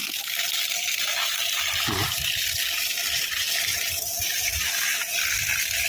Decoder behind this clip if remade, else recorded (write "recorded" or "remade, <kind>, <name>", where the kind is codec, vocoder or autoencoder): recorded